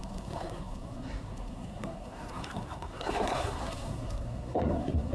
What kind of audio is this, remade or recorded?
remade